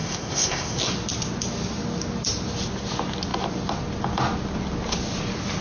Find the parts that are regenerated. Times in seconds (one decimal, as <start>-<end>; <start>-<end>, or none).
0.0-0.8